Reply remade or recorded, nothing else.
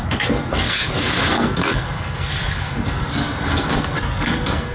remade